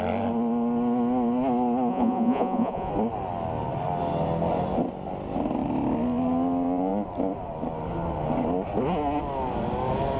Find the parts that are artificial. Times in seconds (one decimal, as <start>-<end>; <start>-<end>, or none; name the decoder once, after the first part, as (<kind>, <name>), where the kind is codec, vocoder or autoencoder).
1.9-2.9 (vocoder, Vocos)